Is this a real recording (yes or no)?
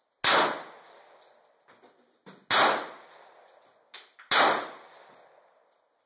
yes